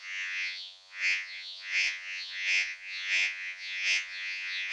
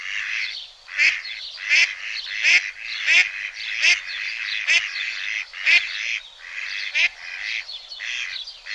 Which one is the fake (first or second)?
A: first